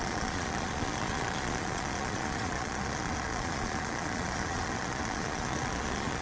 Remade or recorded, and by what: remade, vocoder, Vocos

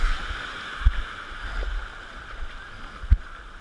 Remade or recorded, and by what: recorded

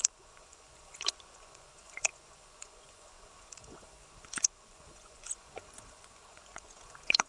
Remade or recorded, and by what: remade, vocoder, Vocos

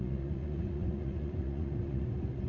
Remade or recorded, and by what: remade, vocoder, Vocos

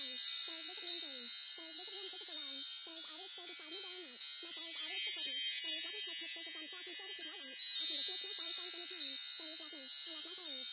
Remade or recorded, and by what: recorded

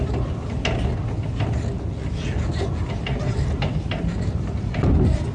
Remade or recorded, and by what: recorded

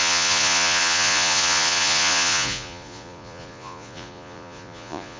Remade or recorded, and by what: remade, vocoder, Vocos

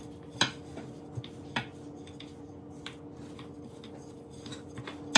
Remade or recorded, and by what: recorded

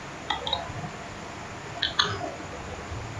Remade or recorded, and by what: recorded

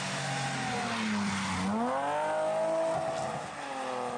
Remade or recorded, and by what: recorded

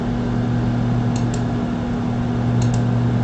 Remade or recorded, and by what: recorded